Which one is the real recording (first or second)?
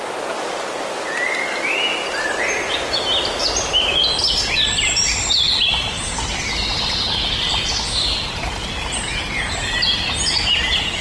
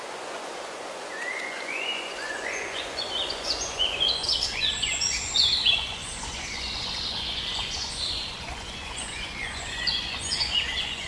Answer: first